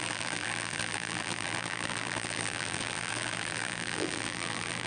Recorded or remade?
remade